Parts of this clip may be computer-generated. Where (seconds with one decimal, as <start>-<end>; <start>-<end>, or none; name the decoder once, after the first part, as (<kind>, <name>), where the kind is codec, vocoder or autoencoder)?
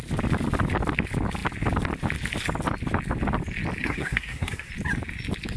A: 3.8-4.7 (codec, SNAC)